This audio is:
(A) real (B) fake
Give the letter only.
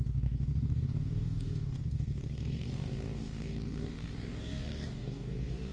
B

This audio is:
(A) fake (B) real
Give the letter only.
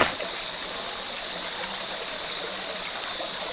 B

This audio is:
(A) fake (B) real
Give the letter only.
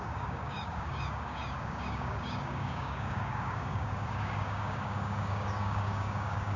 A